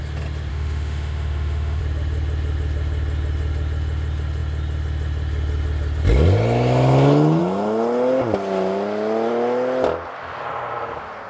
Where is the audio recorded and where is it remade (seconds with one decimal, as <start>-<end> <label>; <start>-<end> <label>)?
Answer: 0.0-0.5 recorded; 0.5-1.8 remade; 1.8-11.3 recorded

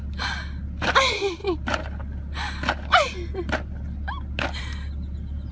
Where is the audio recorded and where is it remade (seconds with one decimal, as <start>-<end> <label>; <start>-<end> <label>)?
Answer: 0.0-5.5 recorded

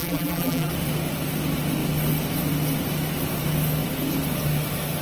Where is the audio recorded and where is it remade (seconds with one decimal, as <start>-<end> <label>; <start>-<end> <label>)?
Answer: 0.0-0.7 remade; 0.7-5.0 recorded

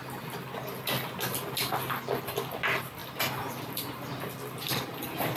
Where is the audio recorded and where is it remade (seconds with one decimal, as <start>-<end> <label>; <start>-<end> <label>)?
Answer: 0.0-5.4 recorded

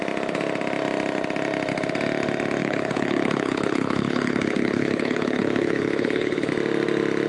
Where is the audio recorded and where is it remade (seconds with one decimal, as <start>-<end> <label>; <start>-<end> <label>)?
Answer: 0.0-2.6 recorded; 2.6-6.5 remade; 6.5-7.3 recorded

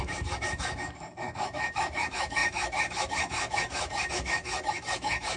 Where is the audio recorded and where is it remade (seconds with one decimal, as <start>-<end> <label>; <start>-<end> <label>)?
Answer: 0.0-5.4 remade